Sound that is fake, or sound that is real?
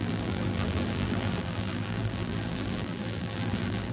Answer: fake